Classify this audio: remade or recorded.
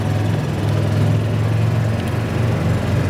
recorded